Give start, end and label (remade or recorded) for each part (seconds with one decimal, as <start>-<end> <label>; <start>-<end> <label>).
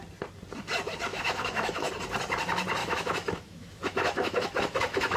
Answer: 0.0-1.1 recorded; 1.1-1.9 remade; 1.9-2.8 recorded; 2.8-5.2 remade